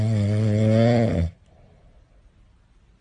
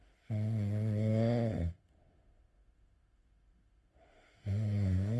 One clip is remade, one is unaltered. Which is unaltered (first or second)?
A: first